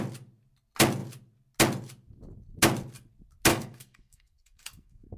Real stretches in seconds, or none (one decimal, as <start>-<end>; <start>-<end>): 0.0-3.5